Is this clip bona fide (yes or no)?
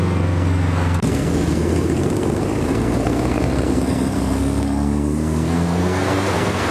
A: no